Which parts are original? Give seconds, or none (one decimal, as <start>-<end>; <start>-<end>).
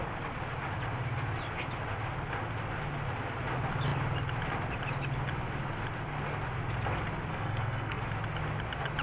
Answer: 0.0-7.3; 8.0-9.0